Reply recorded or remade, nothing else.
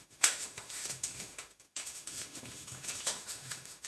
remade